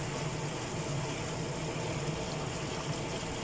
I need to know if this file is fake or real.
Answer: real